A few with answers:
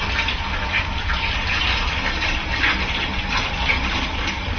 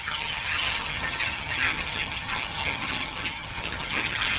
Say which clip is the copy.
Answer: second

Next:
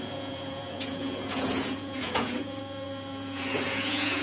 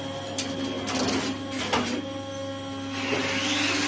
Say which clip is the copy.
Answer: first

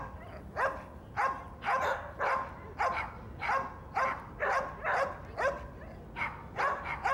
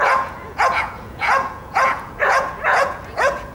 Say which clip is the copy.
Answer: second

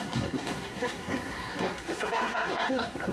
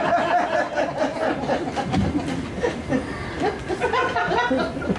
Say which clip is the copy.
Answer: first